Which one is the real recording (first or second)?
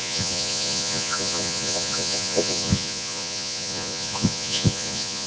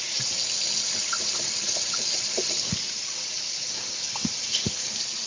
second